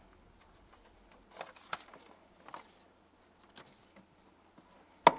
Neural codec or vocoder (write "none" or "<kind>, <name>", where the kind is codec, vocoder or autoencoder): none